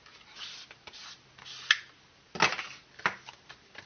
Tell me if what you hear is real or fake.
real